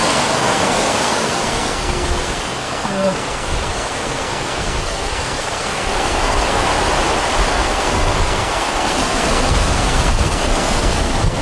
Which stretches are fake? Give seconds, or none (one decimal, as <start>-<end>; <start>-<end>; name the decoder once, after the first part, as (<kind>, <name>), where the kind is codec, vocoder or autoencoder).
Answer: 0.0-6.7 (codec, SNAC); 7.5-11.4